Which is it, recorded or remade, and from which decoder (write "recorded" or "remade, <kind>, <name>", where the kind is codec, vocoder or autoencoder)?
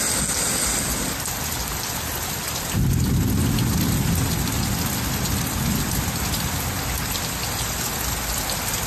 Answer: recorded